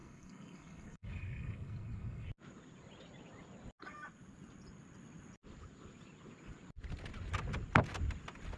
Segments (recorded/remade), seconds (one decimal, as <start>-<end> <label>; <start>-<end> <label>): 0.0-2.3 remade; 2.3-8.6 recorded